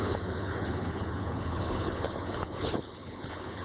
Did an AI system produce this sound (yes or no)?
yes